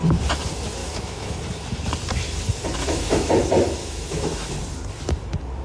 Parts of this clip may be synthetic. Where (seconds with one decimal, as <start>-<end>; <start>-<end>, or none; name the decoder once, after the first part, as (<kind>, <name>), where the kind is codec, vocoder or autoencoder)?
0.8-1.4 (autoencoder, DAC-VAE); 2.8-3.3; 3.8-4.5